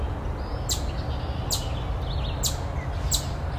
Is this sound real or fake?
real